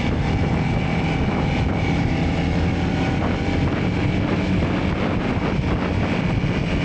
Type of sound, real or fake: real